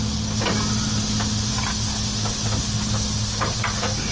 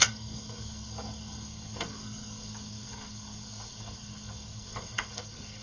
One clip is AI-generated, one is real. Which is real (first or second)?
first